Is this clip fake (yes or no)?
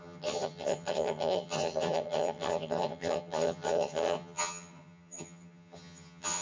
yes